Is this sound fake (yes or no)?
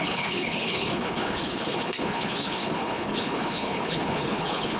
yes